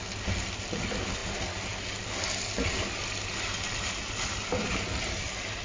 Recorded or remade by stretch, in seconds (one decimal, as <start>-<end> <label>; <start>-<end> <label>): 0.0-5.6 recorded